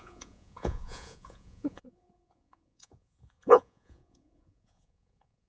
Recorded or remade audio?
remade